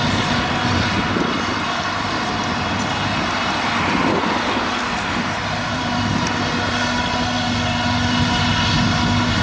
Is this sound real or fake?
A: real